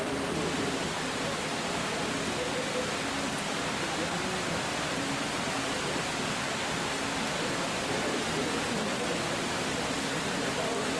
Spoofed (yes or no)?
no